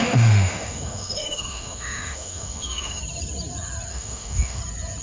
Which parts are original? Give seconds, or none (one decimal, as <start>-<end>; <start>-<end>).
3.0-3.9; 4.6-5.0